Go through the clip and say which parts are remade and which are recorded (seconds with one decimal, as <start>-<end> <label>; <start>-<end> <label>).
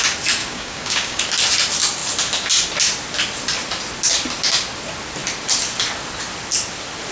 0.0-0.4 recorded; 0.4-1.2 remade; 1.2-7.1 recorded